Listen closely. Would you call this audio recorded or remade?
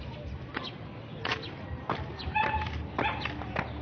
recorded